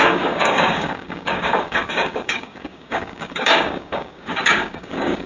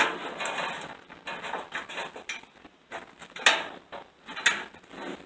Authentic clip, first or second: second